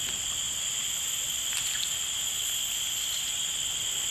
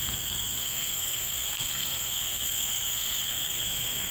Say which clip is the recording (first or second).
first